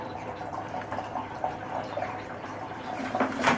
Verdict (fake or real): fake